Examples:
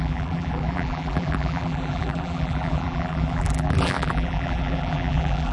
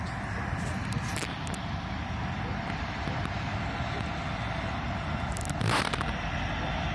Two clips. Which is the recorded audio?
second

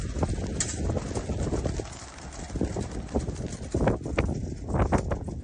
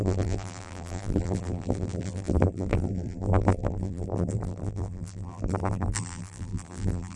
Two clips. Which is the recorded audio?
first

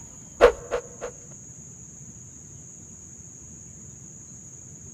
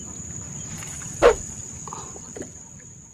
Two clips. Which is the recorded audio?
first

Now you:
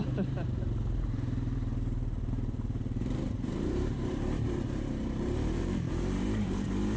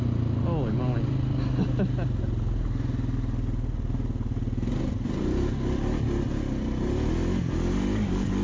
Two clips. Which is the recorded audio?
second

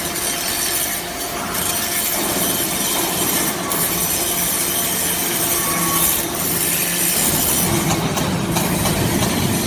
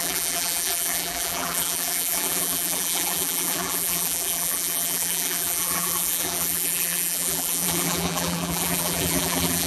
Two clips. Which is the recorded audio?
first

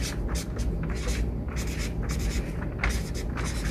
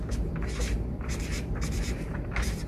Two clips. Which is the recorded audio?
first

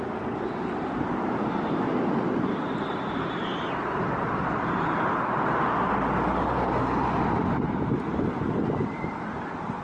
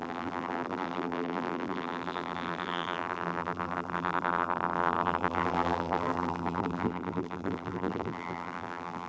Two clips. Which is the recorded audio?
first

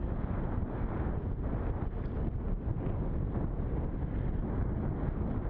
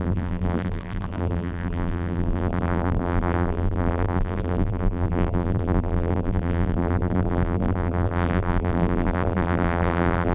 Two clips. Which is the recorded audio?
first